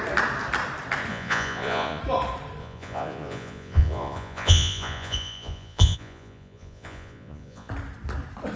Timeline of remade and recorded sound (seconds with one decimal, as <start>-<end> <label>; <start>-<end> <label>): 0.0-1.1 recorded; 1.1-2.0 remade; 2.0-2.6 recorded; 2.6-7.7 remade; 7.7-8.6 recorded